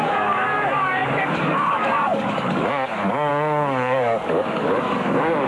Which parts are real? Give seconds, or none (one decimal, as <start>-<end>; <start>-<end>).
none